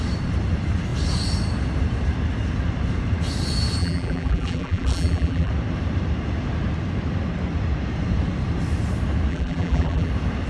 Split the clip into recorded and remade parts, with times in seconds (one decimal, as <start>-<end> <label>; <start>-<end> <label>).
0.0-3.8 recorded; 3.8-5.5 remade; 5.5-9.3 recorded; 9.3-10.1 remade; 10.1-10.5 recorded

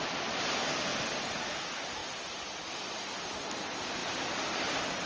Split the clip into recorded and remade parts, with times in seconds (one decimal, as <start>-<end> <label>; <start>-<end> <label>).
0.0-0.9 recorded; 0.9-1.6 remade; 1.6-2.0 recorded; 2.0-3.1 remade; 3.1-4.0 recorded; 4.0-5.1 remade

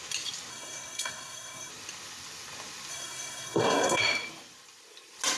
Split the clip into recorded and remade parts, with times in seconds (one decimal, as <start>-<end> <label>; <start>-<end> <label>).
0.0-0.5 recorded; 0.5-1.7 remade; 1.7-2.9 recorded; 2.9-4.0 remade; 4.0-5.4 recorded

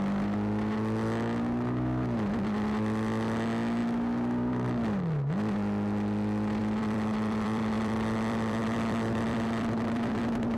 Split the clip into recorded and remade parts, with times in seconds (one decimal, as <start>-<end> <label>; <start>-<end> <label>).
0.0-6.6 recorded; 6.6-10.2 remade; 10.2-10.6 recorded

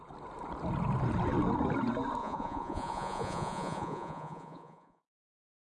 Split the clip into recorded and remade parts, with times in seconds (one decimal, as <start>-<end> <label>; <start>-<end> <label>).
0.0-2.2 recorded; 2.2-5.0 remade; 5.0-5.8 recorded

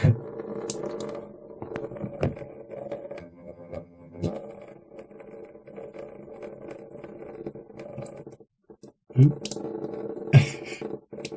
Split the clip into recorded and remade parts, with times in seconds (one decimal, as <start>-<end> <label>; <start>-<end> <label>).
0.0-3.2 recorded; 3.2-4.3 remade; 4.3-11.4 recorded

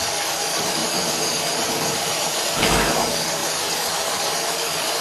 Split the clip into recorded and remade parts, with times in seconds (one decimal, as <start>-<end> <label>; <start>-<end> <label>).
0.0-5.0 remade